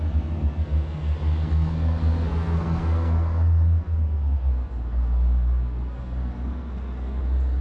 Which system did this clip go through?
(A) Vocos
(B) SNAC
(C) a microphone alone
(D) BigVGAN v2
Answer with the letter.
B